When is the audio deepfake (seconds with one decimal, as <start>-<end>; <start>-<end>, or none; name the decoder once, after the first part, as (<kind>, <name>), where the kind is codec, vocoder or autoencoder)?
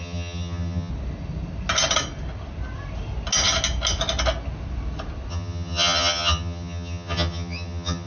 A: 0.0-0.9 (vocoder, HiFi-GAN); 5.3-8.1